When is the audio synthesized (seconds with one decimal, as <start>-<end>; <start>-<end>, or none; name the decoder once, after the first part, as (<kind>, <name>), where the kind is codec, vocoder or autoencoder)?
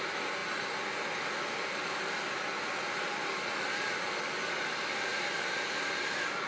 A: none